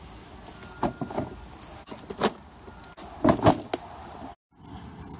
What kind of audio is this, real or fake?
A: real